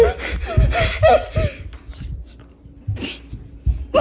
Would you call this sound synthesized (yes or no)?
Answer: no